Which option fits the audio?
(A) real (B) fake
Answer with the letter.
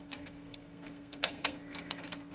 B